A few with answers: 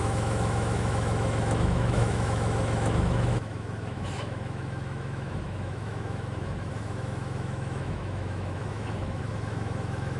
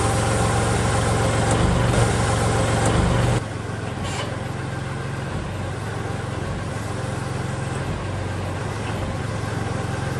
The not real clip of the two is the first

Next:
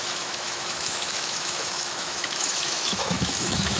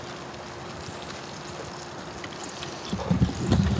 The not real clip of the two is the first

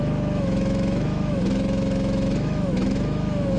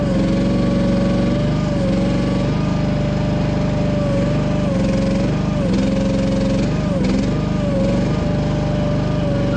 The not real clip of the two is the first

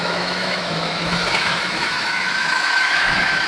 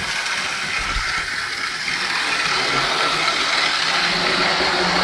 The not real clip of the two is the first